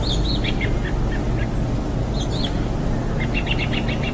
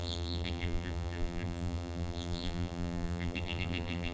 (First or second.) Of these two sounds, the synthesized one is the second